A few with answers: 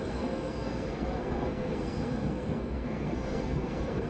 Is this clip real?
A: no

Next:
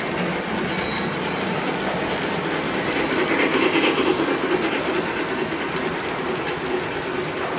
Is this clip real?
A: yes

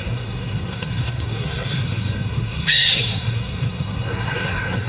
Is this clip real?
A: no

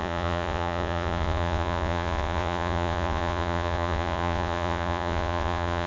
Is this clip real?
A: no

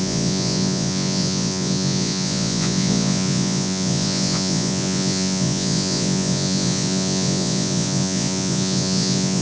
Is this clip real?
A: no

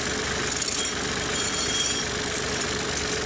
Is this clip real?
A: yes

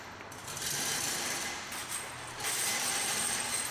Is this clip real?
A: no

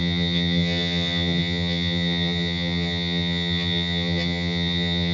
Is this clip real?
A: no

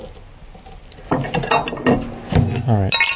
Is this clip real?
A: yes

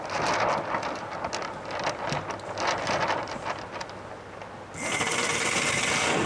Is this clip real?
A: yes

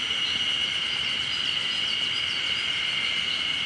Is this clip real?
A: yes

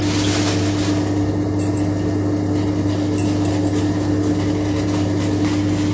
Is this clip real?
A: yes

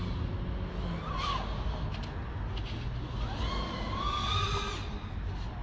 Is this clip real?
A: yes